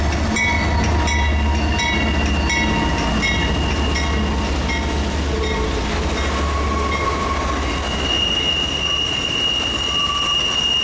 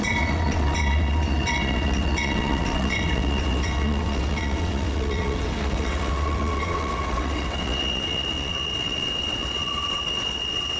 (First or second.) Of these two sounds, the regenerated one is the second